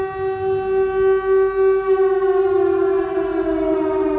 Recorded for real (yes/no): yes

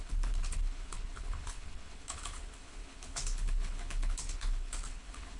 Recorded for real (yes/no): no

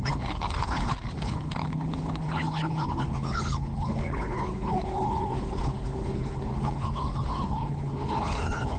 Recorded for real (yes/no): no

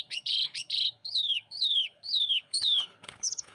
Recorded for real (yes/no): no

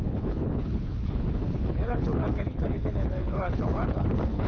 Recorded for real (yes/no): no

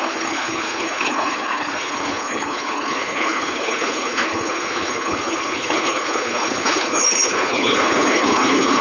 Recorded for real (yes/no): no